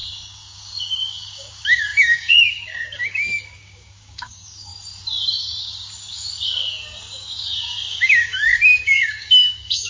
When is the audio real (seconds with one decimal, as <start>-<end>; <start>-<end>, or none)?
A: 4.7-5.6